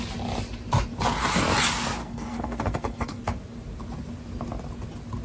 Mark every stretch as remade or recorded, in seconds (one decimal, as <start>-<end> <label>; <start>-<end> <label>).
0.0-2.0 recorded; 2.0-3.2 remade; 3.2-5.2 recorded